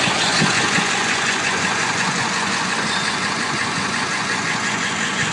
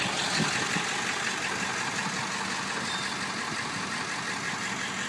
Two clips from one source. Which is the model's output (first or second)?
first